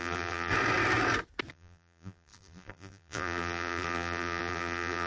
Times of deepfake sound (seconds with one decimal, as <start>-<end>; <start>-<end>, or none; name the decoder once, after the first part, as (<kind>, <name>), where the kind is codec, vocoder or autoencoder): 0.0-0.5 (vocoder, BigVGAN v2); 1.5-5.1